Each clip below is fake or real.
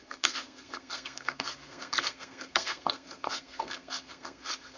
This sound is fake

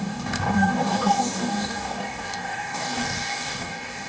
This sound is fake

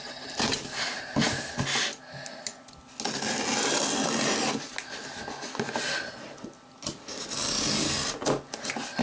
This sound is real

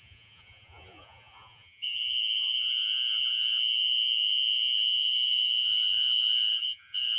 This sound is fake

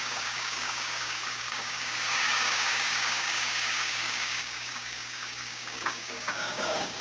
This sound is fake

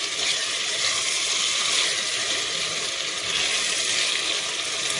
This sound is real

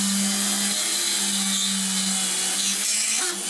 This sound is real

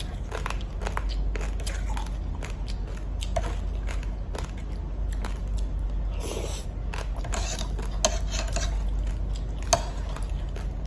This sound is real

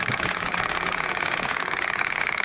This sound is fake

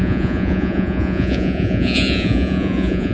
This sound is fake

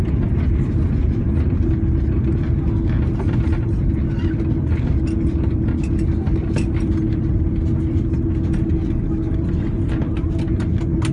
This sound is real